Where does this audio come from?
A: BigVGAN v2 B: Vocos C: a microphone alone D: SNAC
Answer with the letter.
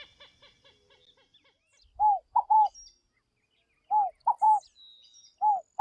C